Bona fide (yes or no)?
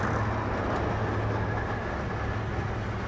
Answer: yes